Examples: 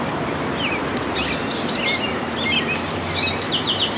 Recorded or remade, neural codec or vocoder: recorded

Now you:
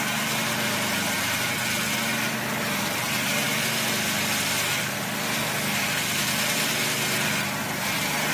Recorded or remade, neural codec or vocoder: recorded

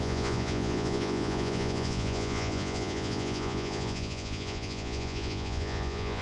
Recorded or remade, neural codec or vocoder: remade, vocoder, Vocos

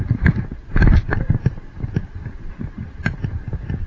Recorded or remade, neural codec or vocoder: recorded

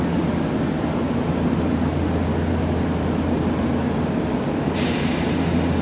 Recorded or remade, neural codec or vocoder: recorded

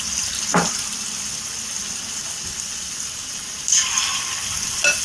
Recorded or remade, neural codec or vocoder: recorded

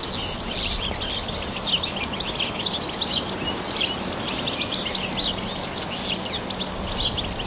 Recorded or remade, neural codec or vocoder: recorded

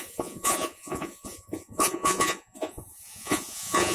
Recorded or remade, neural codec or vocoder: remade, vocoder, Vocos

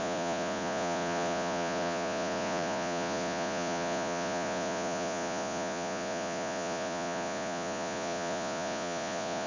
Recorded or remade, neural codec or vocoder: remade, vocoder, Vocos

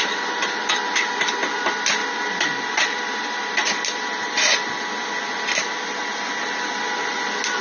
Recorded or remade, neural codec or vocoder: recorded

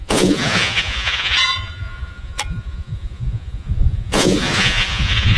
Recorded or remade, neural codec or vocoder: remade, vocoder, Vocos